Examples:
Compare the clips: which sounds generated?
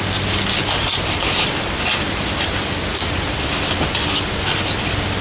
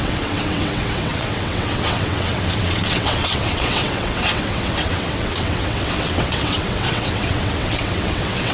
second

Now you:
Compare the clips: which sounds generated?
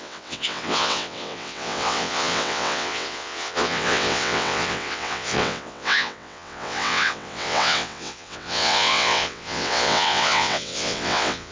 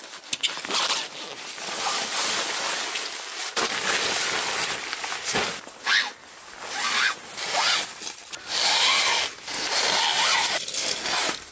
first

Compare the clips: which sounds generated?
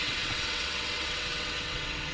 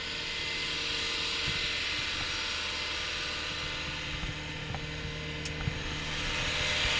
first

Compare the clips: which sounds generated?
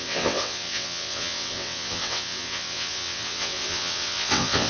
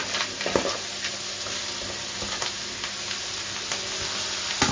first